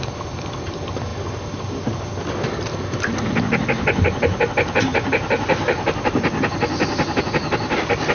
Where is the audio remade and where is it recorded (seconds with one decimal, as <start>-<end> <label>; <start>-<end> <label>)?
0.0-8.1 recorded